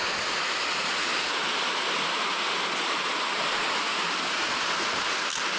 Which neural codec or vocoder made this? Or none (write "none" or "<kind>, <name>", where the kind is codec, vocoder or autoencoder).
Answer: none